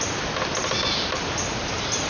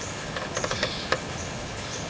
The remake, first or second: second